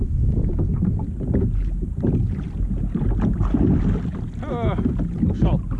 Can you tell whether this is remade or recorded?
recorded